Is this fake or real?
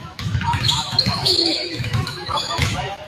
fake